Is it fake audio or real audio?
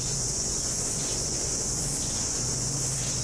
fake